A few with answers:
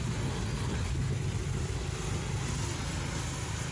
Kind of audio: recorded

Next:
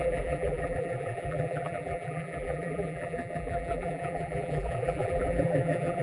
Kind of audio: remade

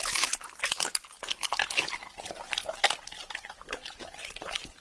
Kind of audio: recorded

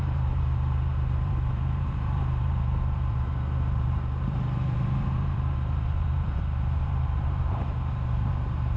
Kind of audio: remade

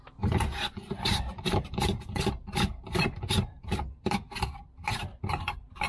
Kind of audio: remade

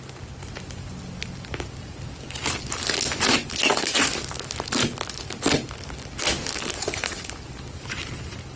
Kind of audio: recorded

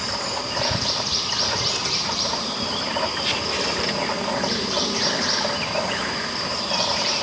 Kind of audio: remade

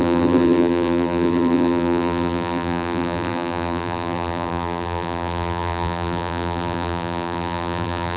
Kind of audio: remade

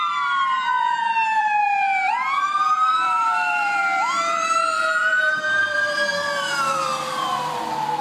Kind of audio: remade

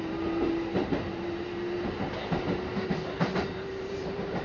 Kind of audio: remade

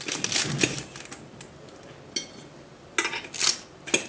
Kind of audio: recorded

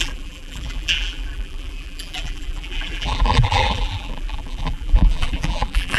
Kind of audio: remade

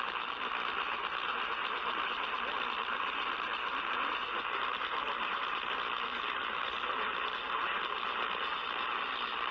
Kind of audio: remade